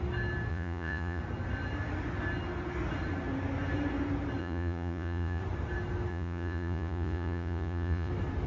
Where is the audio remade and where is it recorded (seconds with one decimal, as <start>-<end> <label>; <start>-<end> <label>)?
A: 0.0-0.5 recorded; 0.5-1.2 remade; 1.2-4.4 recorded; 4.4-5.4 remade; 5.4-6.1 recorded; 6.1-8.1 remade; 8.1-8.5 recorded